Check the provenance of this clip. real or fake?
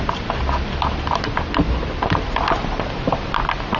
real